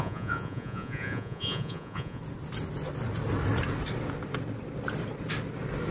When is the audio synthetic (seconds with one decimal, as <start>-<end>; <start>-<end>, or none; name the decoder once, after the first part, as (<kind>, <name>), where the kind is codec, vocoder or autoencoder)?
0.0-2.2 (vocoder, Vocos)